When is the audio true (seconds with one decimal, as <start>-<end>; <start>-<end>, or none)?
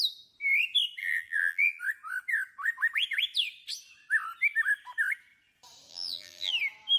0.0-1.0; 1.8-5.9; 6.5-7.0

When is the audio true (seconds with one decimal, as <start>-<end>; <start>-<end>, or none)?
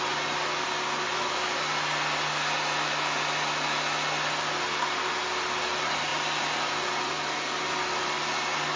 0.0-8.8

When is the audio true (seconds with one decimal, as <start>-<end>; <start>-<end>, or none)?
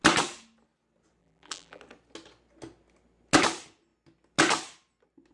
0.0-1.2; 1.8-5.3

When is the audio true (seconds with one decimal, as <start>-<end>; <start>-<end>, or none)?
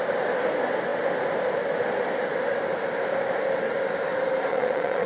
0.0-4.5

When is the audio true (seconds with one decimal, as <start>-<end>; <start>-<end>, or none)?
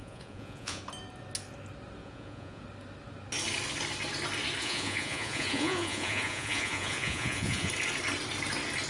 0.8-2.0; 2.6-4.6; 7.7-8.9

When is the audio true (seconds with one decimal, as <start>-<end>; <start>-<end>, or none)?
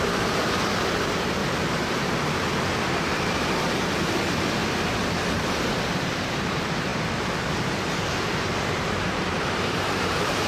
4.6-5.3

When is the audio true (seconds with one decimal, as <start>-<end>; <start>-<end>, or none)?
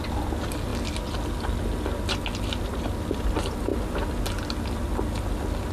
0.0-5.7